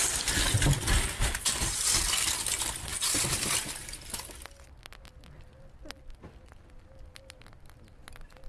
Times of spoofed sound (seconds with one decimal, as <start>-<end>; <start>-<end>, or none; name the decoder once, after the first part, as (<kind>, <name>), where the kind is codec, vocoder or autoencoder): none